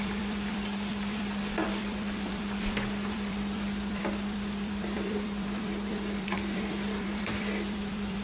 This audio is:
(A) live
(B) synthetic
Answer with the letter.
B